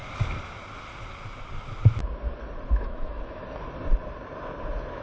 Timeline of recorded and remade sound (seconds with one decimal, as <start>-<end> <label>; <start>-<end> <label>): 0.0-2.7 recorded; 2.7-3.4 remade; 3.4-5.0 recorded